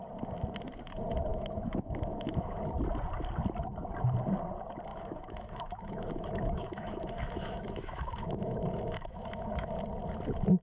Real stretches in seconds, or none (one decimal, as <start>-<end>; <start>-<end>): 0.0-1.3; 2.6-4.9; 9.7-10.6